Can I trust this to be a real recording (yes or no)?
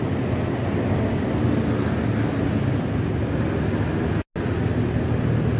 yes